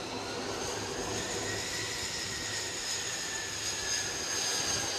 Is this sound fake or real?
real